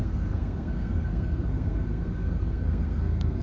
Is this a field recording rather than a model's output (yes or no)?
no